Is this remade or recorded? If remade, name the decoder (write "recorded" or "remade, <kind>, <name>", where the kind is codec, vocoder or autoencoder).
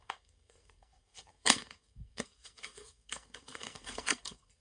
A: remade, codec, SNAC